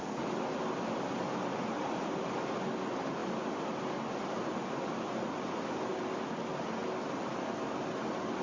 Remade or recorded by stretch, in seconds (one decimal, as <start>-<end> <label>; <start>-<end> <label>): 0.0-8.4 recorded

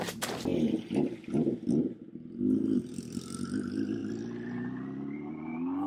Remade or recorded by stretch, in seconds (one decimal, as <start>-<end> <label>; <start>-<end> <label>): 0.0-5.9 recorded

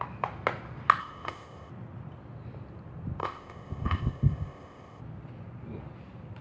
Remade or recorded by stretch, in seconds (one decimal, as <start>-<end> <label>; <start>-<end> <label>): 0.0-1.0 recorded; 1.0-1.7 remade; 1.7-3.2 recorded; 3.2-5.0 remade; 5.0-6.4 recorded